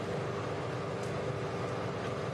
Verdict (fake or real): real